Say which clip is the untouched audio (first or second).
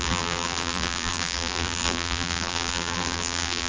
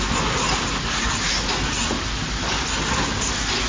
second